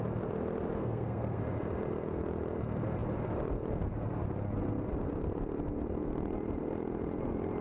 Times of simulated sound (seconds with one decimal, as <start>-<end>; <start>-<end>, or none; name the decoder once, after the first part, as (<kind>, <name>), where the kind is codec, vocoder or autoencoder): 0.8-1.4 (codec, SNAC)